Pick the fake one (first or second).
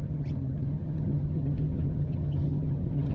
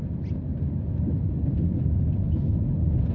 first